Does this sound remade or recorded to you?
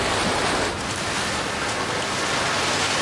recorded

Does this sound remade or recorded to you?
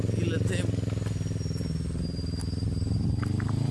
recorded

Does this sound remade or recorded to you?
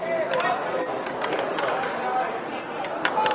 recorded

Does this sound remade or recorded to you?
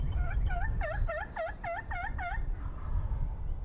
recorded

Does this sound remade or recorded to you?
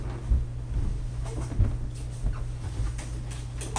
recorded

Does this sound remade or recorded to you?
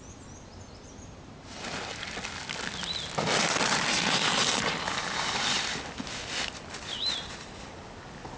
recorded